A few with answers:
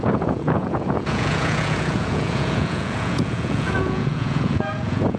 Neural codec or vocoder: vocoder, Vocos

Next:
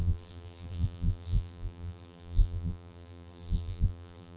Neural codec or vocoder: vocoder, BigVGAN v2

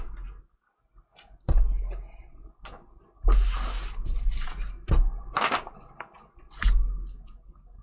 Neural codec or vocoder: none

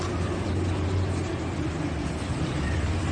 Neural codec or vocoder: none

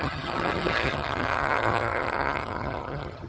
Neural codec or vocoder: vocoder, HiFi-GAN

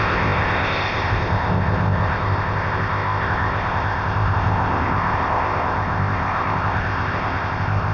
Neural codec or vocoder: codec, ZipCodec